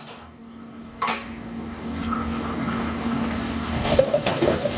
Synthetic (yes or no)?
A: yes